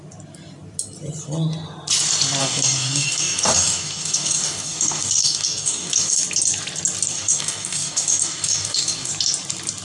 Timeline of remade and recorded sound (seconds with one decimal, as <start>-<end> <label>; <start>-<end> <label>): 0.0-2.4 recorded; 2.4-6.2 remade; 6.2-7.1 recorded; 7.1-9.1 remade; 9.1-9.8 recorded